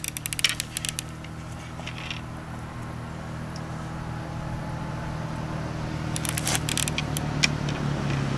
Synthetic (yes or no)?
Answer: no